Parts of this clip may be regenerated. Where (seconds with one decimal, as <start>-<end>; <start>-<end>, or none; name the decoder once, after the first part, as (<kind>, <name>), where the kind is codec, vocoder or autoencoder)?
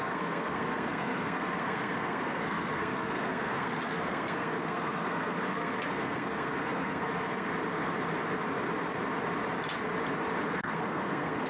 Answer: 0.0-7.5 (codec, SNAC); 10.5-11.5